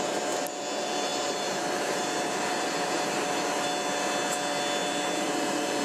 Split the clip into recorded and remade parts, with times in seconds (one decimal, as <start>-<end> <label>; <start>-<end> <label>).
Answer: 0.0-1.1 recorded; 1.1-3.7 remade; 3.7-4.8 recorded; 4.8-5.8 remade